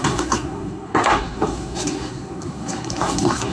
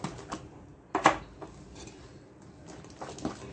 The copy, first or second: first